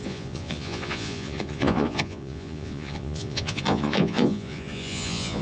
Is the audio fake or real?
fake